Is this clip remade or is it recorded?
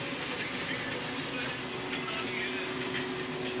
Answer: recorded